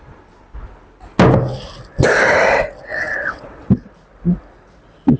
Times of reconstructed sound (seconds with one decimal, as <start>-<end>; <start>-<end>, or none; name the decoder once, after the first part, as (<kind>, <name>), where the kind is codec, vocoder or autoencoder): 2.9-3.7 (vocoder, WaveNeXt)